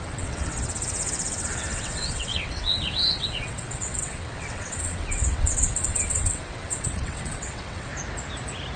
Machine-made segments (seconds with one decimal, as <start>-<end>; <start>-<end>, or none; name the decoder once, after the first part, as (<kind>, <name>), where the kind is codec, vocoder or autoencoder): 0.0-7.9 (vocoder, WaveNeXt)